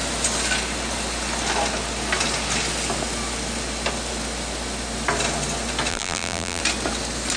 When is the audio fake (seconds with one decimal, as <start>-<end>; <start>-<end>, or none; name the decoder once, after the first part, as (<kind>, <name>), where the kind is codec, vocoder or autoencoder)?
5.9-6.6 (vocoder, BigVGAN v2)